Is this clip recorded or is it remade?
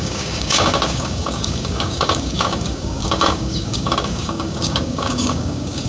remade